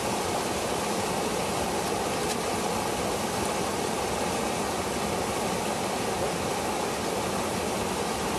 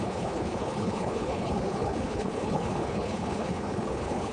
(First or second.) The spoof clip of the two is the second